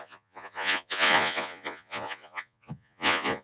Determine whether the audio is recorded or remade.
remade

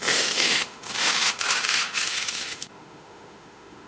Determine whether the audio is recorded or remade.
remade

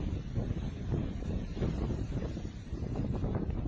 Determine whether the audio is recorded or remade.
recorded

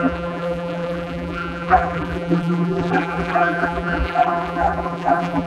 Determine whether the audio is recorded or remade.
remade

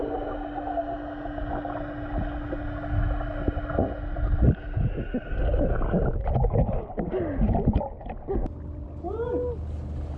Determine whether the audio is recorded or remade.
recorded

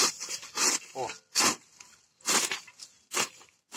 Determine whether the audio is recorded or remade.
recorded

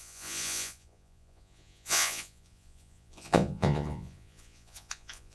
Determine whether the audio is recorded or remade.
remade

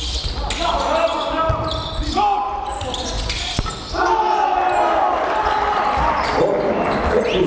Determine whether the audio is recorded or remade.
recorded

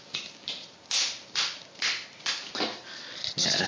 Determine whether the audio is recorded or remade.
recorded